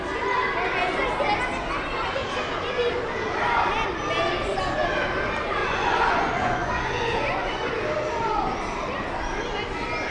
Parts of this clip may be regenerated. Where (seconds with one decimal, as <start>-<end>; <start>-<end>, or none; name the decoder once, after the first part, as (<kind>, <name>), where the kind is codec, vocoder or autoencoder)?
5.6-7.7 (vocoder, Vocos)